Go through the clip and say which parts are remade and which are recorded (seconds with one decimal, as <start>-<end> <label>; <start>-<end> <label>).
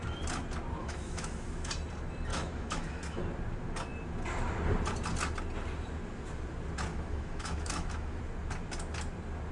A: 0.0-0.8 recorded; 0.8-1.7 remade; 1.7-2.3 recorded; 2.3-3.2 remade; 3.2-6.9 recorded; 6.9-8.2 remade; 8.2-9.5 recorded